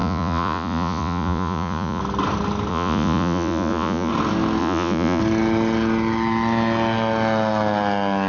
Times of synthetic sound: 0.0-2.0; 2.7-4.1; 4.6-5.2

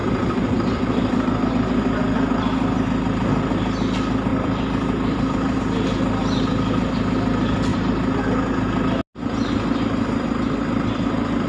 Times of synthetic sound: 4.3-5.6; 7.7-8.2

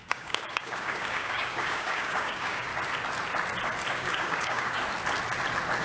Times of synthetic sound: 0.0-2.7; 3.9-4.8